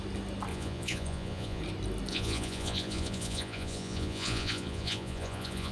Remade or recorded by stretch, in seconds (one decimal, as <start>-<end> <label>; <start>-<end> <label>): 0.0-0.5 recorded; 0.5-1.6 remade; 1.6-2.1 recorded; 2.1-5.7 remade